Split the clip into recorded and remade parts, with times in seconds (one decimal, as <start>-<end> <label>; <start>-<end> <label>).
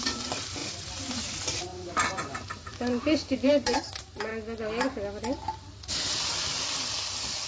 0.0-4.3 remade; 4.3-5.9 recorded; 5.9-7.5 remade